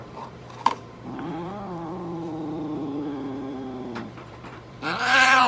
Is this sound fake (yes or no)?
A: yes